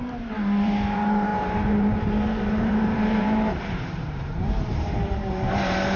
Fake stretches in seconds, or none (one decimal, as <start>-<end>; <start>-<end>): 0.0-6.0